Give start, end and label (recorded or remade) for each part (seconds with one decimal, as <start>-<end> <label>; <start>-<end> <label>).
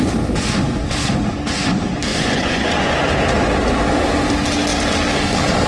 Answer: 0.0-2.1 recorded; 2.1-3.1 remade; 3.1-5.7 recorded